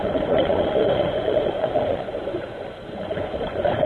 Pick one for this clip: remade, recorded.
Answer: remade